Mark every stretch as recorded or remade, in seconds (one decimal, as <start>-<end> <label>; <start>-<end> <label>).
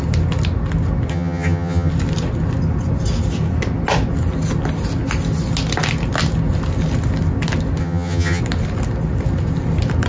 0.0-1.1 recorded; 1.1-1.9 remade; 1.9-7.8 recorded; 7.8-8.4 remade; 8.4-10.1 recorded